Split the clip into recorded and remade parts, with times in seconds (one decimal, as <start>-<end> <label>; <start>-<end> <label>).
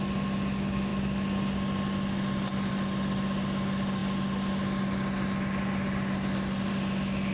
0.0-7.3 recorded